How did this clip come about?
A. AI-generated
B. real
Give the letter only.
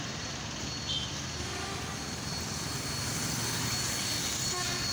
B